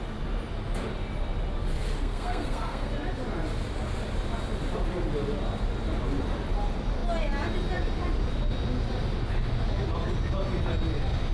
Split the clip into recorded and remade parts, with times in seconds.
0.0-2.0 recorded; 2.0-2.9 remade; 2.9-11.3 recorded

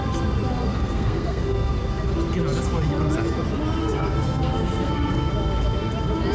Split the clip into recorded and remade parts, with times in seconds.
0.0-0.6 recorded; 0.6-1.7 remade; 1.7-3.8 recorded; 3.8-5.3 remade; 5.3-6.3 recorded

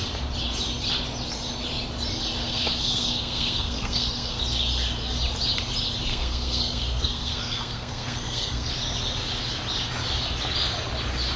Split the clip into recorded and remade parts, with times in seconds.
0.0-2.4 recorded; 2.4-4.4 remade; 4.4-6.1 recorded; 6.1-8.7 remade; 8.7-11.4 recorded

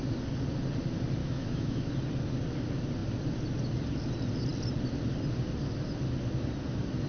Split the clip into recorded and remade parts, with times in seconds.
0.0-1.2 recorded; 1.2-1.9 remade; 1.9-7.1 recorded

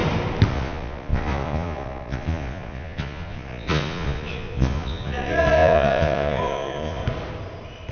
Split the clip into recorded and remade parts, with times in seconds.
0.0-0.5 recorded; 0.5-7.0 remade; 7.0-7.9 recorded